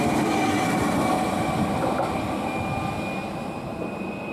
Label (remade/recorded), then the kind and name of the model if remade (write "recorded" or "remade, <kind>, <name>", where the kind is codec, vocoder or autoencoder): recorded